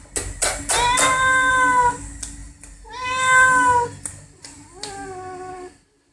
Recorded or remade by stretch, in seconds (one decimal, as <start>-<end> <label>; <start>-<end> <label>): 0.0-6.1 recorded